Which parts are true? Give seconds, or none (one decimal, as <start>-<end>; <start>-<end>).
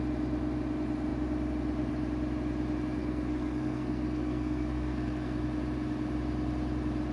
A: 0.0-3.0; 5.4-7.1